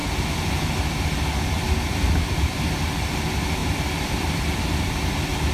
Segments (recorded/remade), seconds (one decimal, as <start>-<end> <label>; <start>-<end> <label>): 0.0-3.6 recorded; 3.6-4.5 remade; 4.5-5.5 recorded